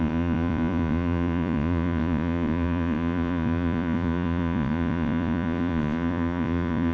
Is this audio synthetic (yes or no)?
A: yes